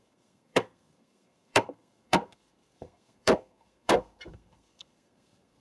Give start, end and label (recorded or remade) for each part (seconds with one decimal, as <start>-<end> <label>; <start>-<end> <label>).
0.0-5.6 remade